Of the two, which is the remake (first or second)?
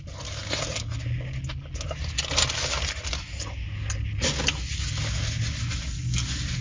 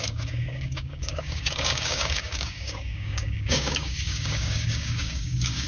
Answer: second